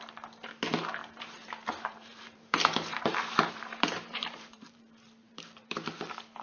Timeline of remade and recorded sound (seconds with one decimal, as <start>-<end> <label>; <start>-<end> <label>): 0.0-1.0 recorded; 1.0-4.8 remade; 4.8-5.2 recorded; 5.2-5.9 remade; 5.9-6.4 recorded